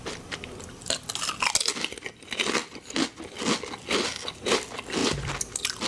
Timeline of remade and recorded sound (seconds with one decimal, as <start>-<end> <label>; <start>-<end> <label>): 0.0-5.9 recorded